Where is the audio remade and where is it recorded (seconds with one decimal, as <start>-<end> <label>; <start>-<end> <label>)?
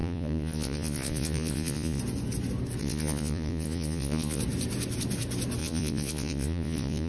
0.0-2.0 remade; 2.0-2.8 recorded; 2.8-4.4 remade; 4.4-5.6 recorded; 5.6-7.1 remade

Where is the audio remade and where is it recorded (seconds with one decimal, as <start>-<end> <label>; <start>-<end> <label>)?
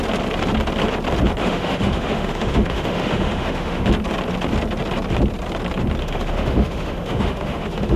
0.0-1.4 recorded; 1.4-3.9 remade; 3.9-6.0 recorded; 6.0-8.0 remade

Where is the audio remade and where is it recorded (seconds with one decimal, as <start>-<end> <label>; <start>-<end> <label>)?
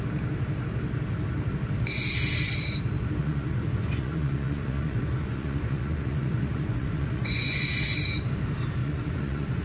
0.0-3.2 recorded; 3.2-7.7 remade; 7.7-8.8 recorded; 8.8-9.6 remade